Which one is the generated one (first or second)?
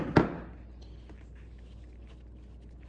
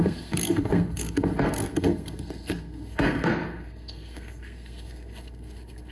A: second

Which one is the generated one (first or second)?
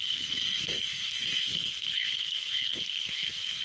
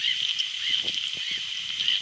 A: first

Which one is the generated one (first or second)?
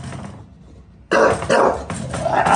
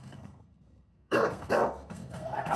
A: second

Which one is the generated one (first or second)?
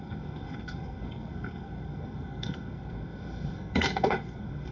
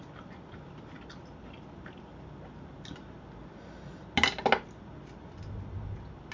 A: first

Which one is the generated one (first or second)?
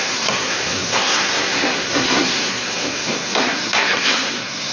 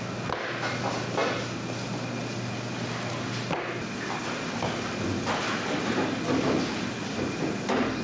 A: first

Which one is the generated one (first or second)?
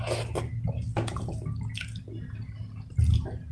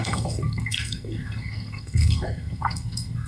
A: second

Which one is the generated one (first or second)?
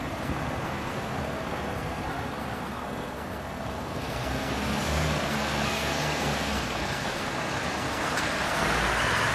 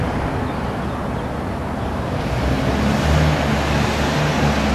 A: first